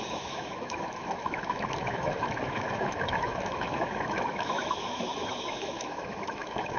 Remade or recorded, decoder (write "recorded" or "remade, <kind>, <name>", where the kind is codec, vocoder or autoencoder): remade, autoencoder, DAC-VAE